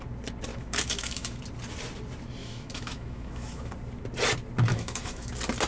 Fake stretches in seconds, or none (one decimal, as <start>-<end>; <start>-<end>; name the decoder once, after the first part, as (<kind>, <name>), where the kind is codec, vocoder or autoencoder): 0.5-1.4 (autoencoder, DAC-VAE); 2.4-3.7; 4.7-5.3